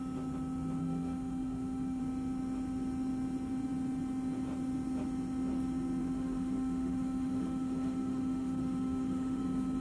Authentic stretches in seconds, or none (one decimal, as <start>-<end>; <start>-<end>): 0.0-0.8; 2.0-6.0; 9.4-9.8